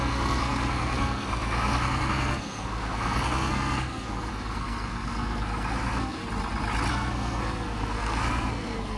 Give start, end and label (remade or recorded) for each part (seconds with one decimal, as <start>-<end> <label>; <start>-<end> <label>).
0.0-6.2 remade; 6.2-6.9 recorded; 6.9-9.0 remade